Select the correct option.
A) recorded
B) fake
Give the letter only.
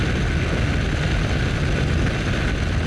A